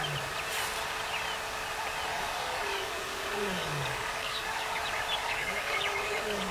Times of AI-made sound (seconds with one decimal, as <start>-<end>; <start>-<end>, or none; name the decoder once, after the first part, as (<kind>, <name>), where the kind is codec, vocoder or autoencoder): 2.1-4.8 (codec, DAC); 5.2-6.5